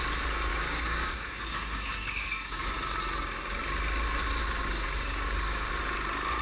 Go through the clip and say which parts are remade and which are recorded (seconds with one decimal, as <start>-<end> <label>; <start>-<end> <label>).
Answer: 0.0-0.5 recorded; 0.5-2.7 remade; 2.7-4.4 recorded; 4.4-5.7 remade; 5.7-6.4 recorded